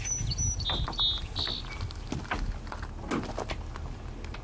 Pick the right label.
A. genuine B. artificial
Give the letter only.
A